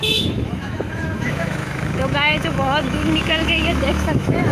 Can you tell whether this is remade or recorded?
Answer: remade